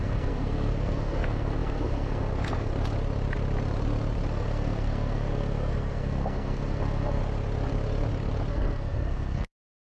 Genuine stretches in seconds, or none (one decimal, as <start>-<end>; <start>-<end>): 2.7-4.3; 7.2-8.5